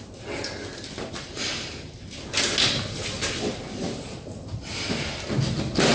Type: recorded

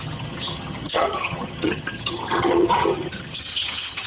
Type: remade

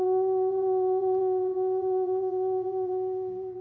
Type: remade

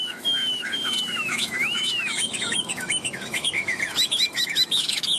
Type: remade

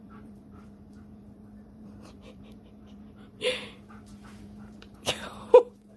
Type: remade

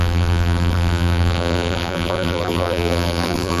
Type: remade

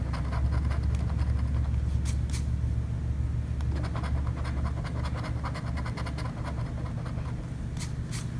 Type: recorded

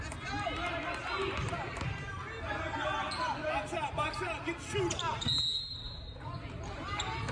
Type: recorded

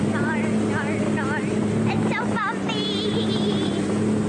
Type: recorded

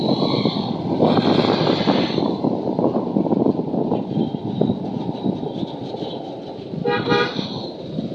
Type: recorded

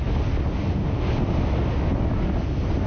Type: recorded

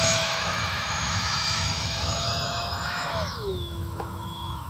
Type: remade